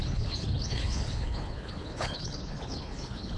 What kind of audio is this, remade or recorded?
remade